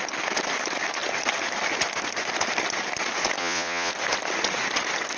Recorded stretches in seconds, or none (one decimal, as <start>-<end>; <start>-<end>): 0.0-3.4; 3.9-5.2